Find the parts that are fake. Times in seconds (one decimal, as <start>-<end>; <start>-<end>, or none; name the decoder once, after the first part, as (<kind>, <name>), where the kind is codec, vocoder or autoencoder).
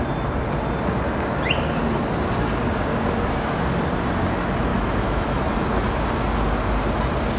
4.7-5.4 (autoencoder, DAC-VAE)